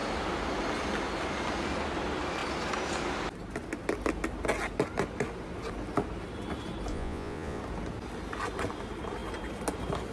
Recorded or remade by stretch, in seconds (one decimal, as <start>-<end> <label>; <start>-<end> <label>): 0.0-6.9 recorded; 6.9-7.6 remade; 7.6-10.1 recorded